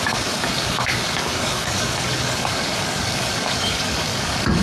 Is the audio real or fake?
fake